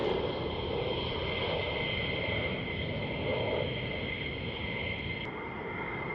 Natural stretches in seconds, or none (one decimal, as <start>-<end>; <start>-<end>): 0.0-6.1